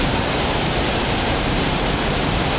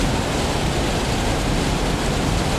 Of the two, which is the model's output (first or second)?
first